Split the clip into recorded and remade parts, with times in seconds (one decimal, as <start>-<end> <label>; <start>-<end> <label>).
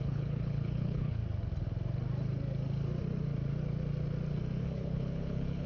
0.0-1.2 remade; 1.2-4.6 recorded; 4.6-5.7 remade